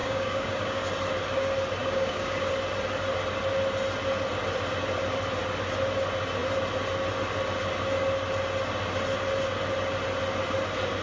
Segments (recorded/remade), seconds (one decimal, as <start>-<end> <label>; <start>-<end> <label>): 0.0-0.8 remade; 0.8-1.8 recorded; 1.8-2.5 remade; 2.5-11.0 recorded